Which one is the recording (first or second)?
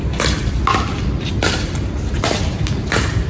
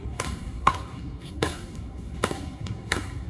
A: first